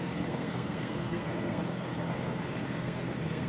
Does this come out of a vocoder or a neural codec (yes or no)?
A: yes